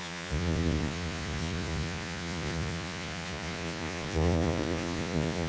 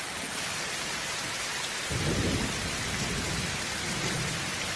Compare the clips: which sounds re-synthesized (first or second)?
first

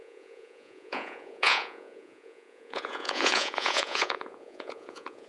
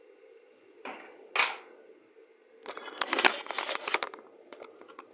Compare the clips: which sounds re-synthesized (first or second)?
first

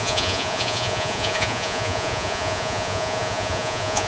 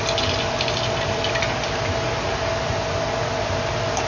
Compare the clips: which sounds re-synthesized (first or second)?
first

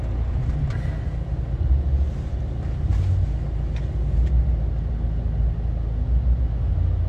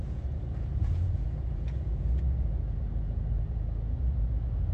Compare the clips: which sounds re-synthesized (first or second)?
second